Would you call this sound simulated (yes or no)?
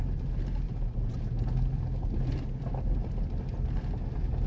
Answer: no